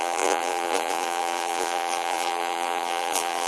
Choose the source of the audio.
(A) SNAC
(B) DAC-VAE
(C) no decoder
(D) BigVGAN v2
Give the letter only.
D